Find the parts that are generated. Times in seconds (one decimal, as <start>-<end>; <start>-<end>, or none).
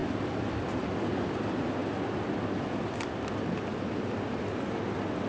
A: none